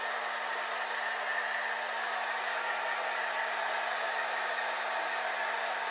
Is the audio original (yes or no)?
yes